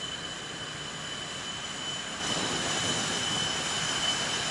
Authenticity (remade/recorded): recorded